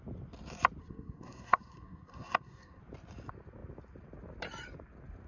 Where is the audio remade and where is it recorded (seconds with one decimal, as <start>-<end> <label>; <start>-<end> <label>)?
0.0-0.8 recorded; 0.8-2.8 remade; 2.8-5.3 recorded